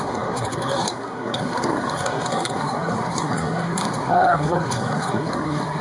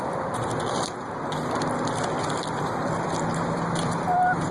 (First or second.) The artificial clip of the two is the first